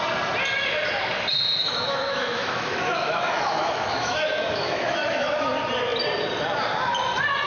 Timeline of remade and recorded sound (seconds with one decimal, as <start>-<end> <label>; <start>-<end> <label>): 0.0-1.6 recorded; 1.6-5.5 remade; 5.5-7.5 recorded